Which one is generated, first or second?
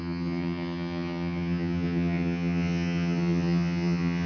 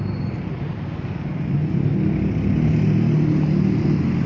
first